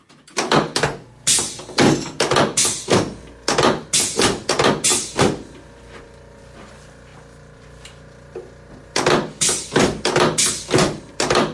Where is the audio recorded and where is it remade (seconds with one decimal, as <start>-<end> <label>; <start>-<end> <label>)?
0.0-11.5 recorded